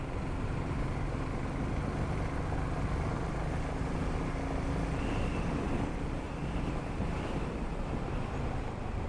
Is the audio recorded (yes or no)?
yes